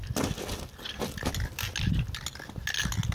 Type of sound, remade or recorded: recorded